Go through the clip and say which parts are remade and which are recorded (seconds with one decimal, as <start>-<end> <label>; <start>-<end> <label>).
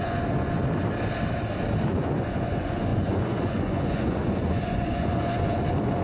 0.0-0.6 remade; 0.6-1.9 recorded; 1.9-6.0 remade